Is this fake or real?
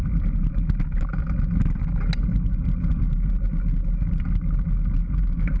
real